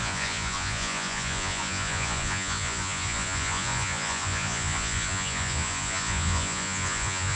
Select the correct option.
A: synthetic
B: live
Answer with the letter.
A